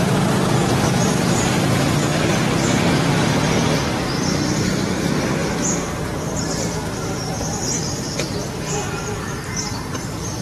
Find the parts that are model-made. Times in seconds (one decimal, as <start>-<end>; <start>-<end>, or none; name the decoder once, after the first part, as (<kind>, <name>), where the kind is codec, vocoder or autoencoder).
0.0-10.4 (vocoder, BigVGAN v2)